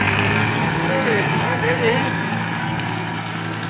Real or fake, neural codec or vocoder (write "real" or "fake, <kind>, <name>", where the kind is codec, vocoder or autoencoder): fake, codec, SNAC